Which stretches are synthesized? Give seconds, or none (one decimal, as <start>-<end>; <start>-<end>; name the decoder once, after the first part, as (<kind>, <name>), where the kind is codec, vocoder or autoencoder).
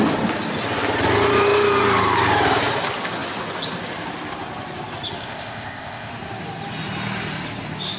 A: 5.2-6.1 (codec, ZipCodec)